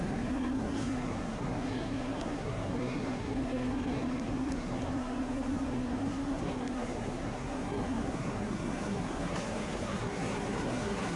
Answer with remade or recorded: remade